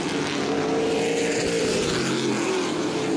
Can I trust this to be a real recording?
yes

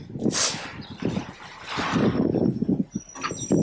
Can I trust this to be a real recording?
yes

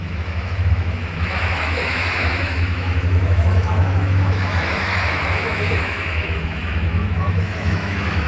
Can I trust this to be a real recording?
no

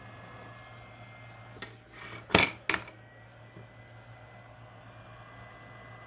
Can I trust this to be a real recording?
yes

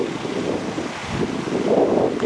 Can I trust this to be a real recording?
yes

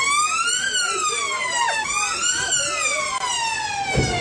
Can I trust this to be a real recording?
yes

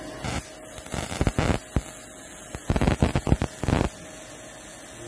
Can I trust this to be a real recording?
yes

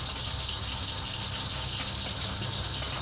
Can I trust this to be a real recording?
yes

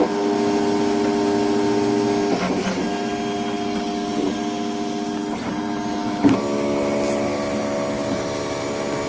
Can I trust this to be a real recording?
yes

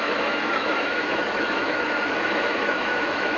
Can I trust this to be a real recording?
no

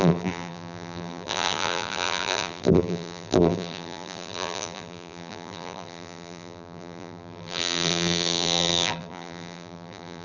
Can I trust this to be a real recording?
no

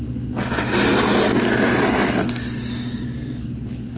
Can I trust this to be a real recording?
yes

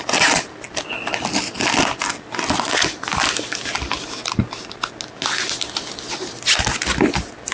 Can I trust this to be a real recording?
yes